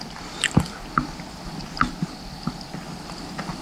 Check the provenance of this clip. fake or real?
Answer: real